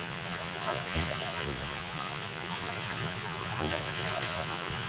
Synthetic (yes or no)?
yes